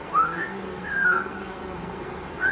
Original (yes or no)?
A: no